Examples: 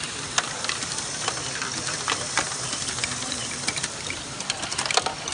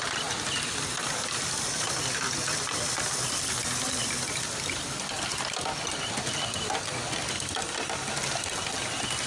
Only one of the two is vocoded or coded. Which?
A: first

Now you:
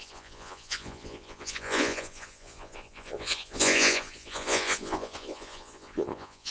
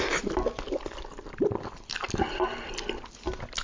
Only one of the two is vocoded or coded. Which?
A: first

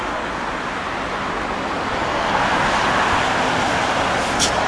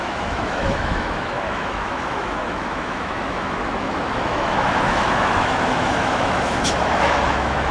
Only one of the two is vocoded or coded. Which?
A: second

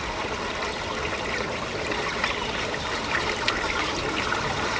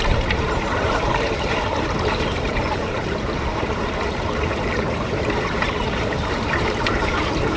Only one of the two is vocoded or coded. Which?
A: second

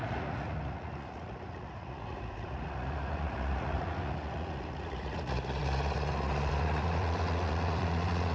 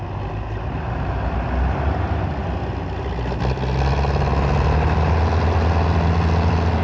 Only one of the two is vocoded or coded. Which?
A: first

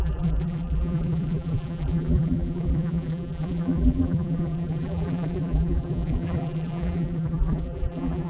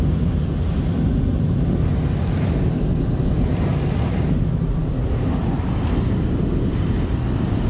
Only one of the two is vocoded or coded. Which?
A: first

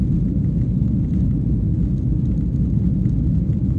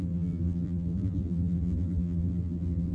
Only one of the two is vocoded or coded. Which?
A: second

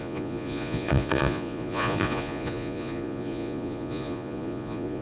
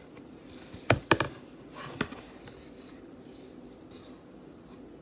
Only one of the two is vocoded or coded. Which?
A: first